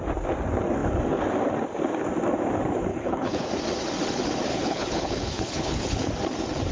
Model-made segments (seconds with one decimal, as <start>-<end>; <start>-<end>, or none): 2.9-3.5; 4.5-6.1